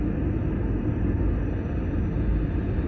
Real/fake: real